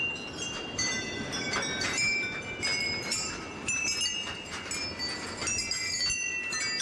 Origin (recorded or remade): recorded